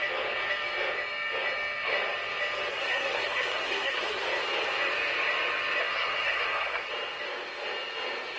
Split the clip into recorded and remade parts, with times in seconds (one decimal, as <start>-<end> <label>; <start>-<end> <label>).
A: 0.0-2.7 recorded; 2.7-4.2 remade; 4.2-5.8 recorded; 5.8-6.9 remade; 6.9-8.4 recorded